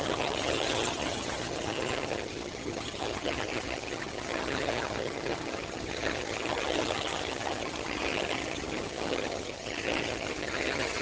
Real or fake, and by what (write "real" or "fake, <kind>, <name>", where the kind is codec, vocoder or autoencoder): fake, vocoder, HiFi-GAN